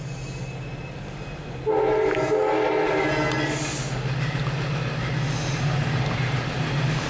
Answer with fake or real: real